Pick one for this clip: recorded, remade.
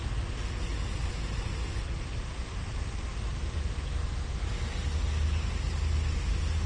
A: recorded